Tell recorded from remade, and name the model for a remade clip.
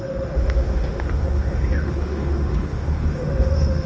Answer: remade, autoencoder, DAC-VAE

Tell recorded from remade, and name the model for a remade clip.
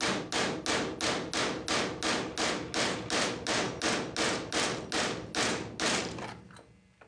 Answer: recorded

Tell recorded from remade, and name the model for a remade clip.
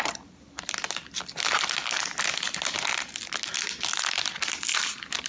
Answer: recorded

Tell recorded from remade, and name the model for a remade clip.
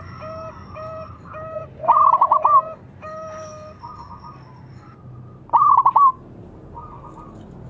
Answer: recorded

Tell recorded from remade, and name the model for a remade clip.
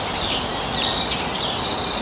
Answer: recorded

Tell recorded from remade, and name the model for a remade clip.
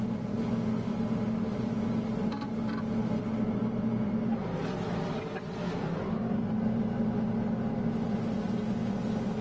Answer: recorded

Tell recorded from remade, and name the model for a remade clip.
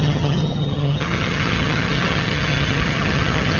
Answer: remade, vocoder, HiFi-GAN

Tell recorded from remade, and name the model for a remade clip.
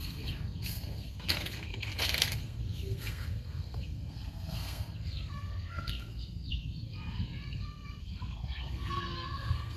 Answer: remade, codec, SNAC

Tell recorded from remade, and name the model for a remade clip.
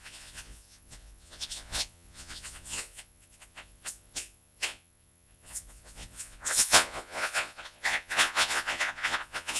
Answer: remade, vocoder, Vocos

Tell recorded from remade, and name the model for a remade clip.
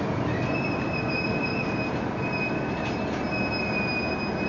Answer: recorded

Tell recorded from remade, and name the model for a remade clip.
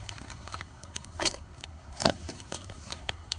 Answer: remade, codec, SNAC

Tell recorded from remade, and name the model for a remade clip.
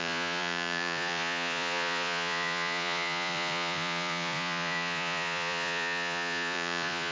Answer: remade, vocoder, Vocos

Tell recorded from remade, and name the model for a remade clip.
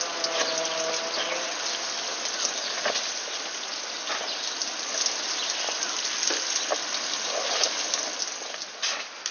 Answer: recorded